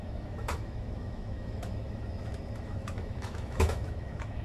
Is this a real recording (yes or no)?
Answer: no